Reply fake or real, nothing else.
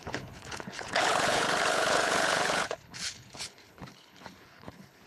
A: fake